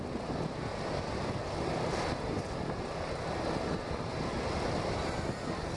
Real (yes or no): yes